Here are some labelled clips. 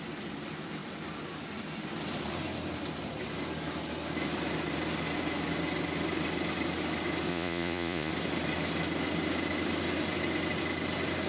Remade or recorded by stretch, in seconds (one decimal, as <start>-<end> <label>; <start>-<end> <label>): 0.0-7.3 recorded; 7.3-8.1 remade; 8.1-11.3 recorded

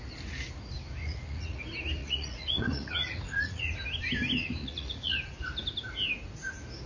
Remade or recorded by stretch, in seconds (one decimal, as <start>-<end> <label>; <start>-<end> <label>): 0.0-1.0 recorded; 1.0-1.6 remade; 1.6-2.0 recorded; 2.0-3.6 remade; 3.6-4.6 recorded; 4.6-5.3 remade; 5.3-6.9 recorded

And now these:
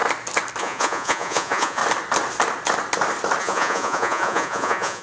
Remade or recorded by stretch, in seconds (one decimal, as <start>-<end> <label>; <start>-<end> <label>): 0.0-0.6 recorded; 0.6-1.8 remade; 1.8-3.4 recorded; 3.4-5.0 remade

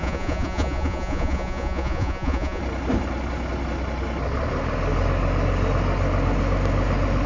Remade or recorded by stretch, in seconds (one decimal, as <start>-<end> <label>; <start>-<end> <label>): 0.0-2.6 remade; 2.6-7.3 recorded